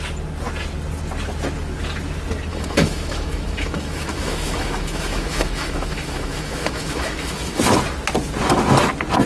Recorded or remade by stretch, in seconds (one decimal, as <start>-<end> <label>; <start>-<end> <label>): 0.0-2.5 recorded; 2.5-7.6 remade; 7.6-9.3 recorded